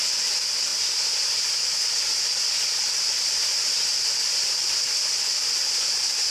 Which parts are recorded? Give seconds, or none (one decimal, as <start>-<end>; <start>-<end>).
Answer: 0.0-0.7; 4.0-6.3